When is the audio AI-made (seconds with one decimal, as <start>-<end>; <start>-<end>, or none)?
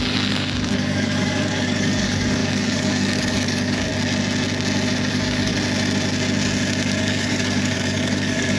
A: 0.0-3.9; 5.1-5.5; 7.0-8.6